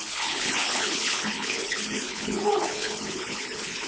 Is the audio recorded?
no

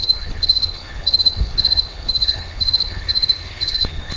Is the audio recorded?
no